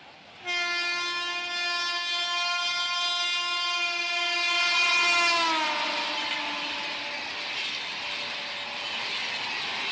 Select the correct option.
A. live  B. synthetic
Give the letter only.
A